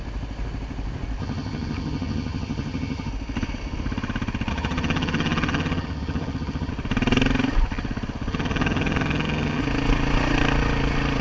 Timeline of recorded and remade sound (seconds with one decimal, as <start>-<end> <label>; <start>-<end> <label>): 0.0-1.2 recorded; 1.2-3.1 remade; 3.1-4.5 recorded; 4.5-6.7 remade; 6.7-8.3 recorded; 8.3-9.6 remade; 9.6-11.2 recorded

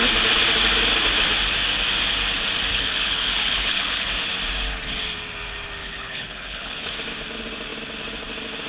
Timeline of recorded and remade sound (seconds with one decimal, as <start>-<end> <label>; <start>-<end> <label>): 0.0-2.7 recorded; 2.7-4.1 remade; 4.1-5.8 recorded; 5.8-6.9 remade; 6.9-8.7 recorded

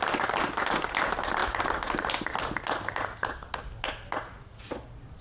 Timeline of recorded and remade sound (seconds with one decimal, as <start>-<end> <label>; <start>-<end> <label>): 0.0-5.2 recorded

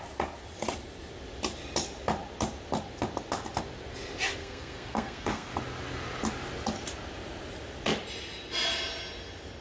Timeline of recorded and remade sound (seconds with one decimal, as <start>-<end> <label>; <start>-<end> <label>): 0.0-4.4 recorded; 4.4-5.5 remade; 5.5-9.6 recorded

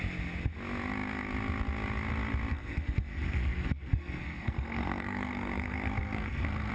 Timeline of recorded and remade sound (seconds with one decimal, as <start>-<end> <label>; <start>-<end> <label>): 0.0-2.5 recorded; 2.5-6.7 remade

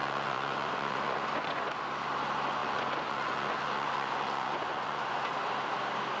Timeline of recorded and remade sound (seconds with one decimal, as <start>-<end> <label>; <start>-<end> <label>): 0.0-1.8 remade; 1.8-2.6 recorded; 2.6-5.3 remade; 5.3-6.2 recorded

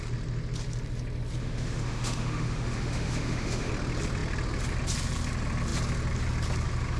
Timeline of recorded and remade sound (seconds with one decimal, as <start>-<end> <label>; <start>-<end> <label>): 0.0-1.4 recorded; 1.4-3.7 remade; 3.7-7.0 recorded